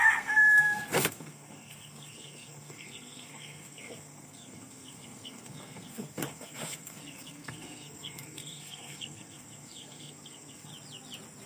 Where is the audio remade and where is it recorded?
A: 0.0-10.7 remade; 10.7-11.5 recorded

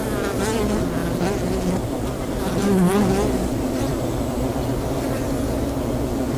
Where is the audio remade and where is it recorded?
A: 0.0-3.9 recorded; 3.9-5.8 remade; 5.8-6.4 recorded

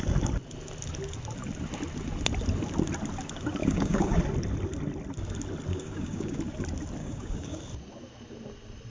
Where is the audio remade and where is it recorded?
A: 0.0-3.6 recorded; 3.6-4.2 remade; 4.2-5.7 recorded; 5.7-6.4 remade; 6.4-7.0 recorded; 7.0-7.6 remade; 7.6-8.9 recorded

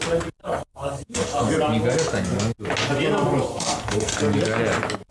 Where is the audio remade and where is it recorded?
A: 0.0-0.4 recorded; 0.4-1.5 remade; 1.5-3.5 recorded; 3.5-4.2 remade; 4.2-5.1 recorded

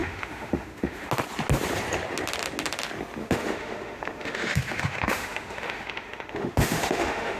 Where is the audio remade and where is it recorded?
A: 0.0-1.1 remade; 1.1-3.2 recorded; 3.2-7.4 remade

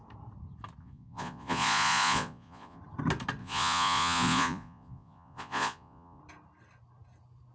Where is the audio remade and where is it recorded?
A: 0.0-0.8 recorded; 0.8-2.8 remade; 2.8-3.4 recorded; 3.4-6.2 remade; 6.2-7.5 recorded

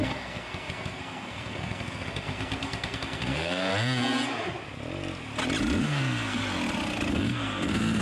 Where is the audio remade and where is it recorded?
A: 0.0-3.7 remade; 3.7-5.8 recorded; 5.8-6.4 remade; 6.4-7.1 recorded; 7.1-8.0 remade